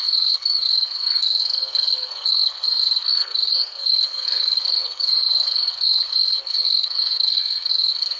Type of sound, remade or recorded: remade